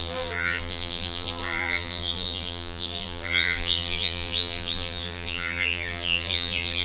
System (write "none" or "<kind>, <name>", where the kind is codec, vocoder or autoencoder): vocoder, BigVGAN v2